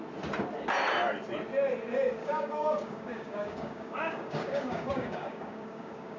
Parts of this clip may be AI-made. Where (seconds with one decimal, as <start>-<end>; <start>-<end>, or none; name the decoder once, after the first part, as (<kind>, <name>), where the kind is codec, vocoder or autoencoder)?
2.2-6.2 (codec, DAC)